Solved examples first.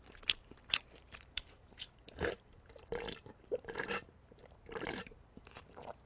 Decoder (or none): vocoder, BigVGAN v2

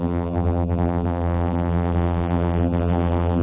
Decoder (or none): vocoder, BigVGAN v2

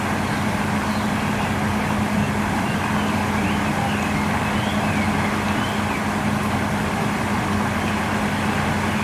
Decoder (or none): none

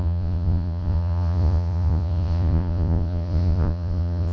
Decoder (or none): vocoder, Vocos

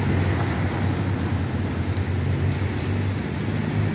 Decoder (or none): none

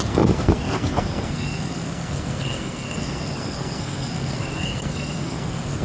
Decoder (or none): codec, SNAC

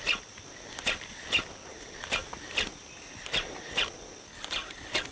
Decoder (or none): none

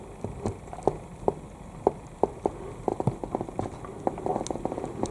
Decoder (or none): none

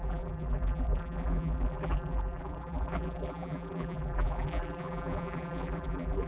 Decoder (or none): vocoder, BigVGAN v2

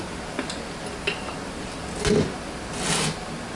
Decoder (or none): none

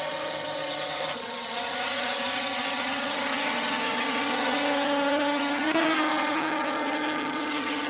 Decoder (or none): vocoder, HiFi-GAN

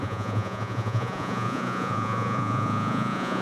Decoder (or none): vocoder, Vocos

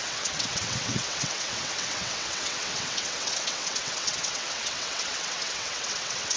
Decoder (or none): vocoder, WaveNeXt